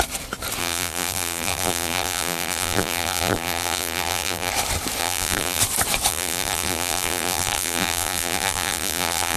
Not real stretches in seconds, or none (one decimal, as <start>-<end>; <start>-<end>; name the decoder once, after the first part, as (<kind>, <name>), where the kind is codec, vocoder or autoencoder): 0.6-4.5 (vocoder, BigVGAN v2); 5.0-5.6; 6.1-9.4